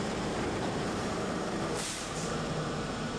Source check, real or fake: fake